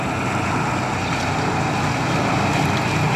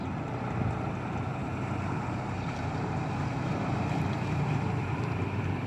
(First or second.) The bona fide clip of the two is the first